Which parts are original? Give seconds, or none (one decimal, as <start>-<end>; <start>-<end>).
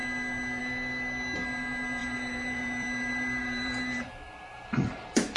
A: 0.0-2.0; 4.1-5.4